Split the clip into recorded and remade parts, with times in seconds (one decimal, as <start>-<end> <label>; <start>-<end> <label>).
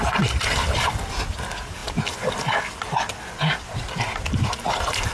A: 0.0-5.1 recorded